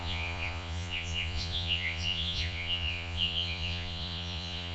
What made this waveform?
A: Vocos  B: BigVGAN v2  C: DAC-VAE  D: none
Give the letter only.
A